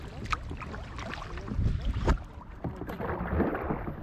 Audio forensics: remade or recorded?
recorded